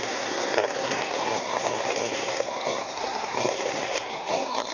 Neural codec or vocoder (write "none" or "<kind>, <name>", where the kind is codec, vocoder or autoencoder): codec, SNAC